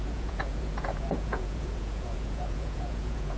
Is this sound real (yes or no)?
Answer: no